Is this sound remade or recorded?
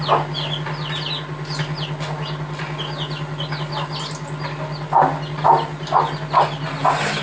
recorded